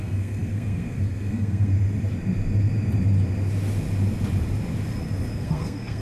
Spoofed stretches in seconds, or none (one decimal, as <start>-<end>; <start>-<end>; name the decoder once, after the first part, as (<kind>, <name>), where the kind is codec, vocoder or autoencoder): 0.0-1.7 (codec, SNAC); 5.3-6.0